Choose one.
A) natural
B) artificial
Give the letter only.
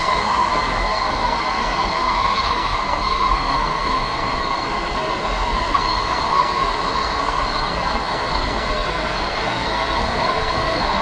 B